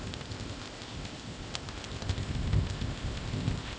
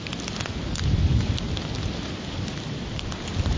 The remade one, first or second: first